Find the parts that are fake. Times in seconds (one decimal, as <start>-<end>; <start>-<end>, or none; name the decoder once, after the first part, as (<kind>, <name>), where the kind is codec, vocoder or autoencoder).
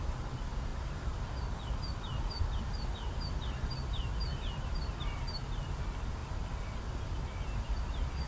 none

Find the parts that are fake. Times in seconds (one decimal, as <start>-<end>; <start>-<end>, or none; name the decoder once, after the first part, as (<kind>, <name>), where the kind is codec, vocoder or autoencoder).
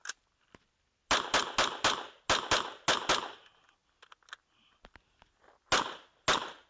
none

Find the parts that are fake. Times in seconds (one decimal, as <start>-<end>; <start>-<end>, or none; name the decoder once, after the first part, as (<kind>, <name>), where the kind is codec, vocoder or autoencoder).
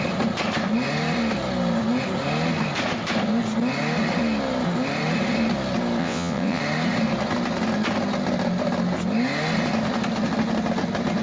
6.0-6.6 (vocoder, WaveNeXt)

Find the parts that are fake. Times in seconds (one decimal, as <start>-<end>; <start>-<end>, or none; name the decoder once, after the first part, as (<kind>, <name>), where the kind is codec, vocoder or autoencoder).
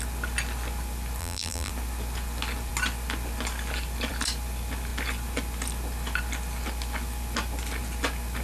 1.2-1.7 (vocoder, BigVGAN v2)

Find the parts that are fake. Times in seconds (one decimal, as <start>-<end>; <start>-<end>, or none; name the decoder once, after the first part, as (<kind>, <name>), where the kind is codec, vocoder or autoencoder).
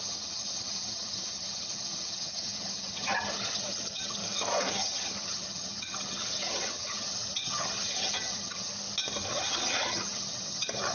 0.0-4.2 (vocoder, HiFi-GAN); 4.7-8.7; 9.3-10.9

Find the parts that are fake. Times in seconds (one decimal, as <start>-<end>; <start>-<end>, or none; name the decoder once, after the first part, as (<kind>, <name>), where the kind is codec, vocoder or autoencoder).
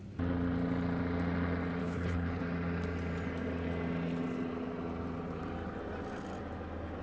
1.8-2.4 (codec, HILCodec)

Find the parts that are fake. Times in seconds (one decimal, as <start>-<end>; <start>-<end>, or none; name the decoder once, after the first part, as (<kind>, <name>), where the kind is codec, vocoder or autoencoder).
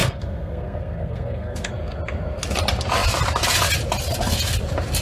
0.0-1.7 (codec, SNAC)